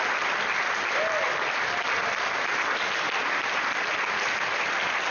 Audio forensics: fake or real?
real